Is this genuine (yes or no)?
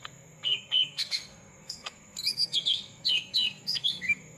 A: no